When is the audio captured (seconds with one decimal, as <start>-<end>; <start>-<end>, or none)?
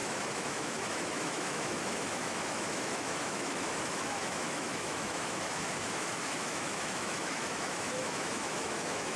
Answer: none